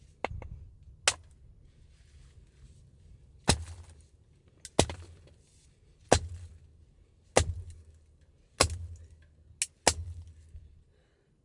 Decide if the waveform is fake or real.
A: real